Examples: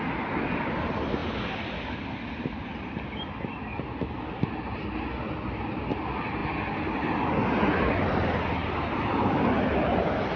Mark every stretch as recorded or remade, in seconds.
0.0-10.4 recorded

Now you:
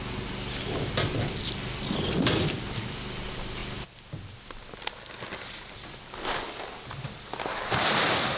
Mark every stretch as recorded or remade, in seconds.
0.0-8.4 recorded

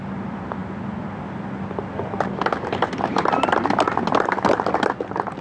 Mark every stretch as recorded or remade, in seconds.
0.0-5.4 recorded

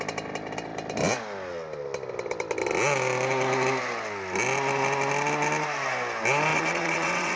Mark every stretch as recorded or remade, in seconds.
0.0-6.5 recorded; 6.5-7.4 remade

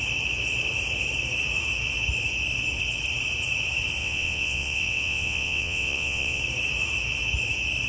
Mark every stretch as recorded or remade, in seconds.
0.0-4.0 recorded; 4.0-6.4 remade; 6.4-7.9 recorded